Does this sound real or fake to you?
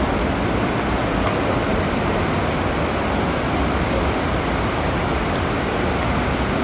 real